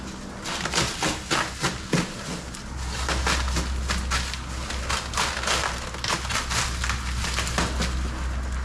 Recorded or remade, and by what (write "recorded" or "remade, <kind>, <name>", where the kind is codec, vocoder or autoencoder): recorded